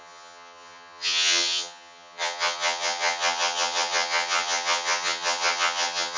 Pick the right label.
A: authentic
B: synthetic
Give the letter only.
B